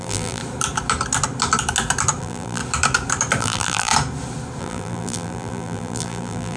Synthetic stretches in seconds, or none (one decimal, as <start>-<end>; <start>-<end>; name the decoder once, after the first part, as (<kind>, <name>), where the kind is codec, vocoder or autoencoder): 0.0-0.4 (vocoder, BigVGAN v2); 2.2-2.6; 3.4-3.9; 4.6-6.6